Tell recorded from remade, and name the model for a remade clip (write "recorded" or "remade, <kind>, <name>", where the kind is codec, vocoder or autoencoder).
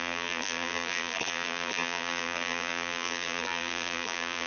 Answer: remade, vocoder, BigVGAN v2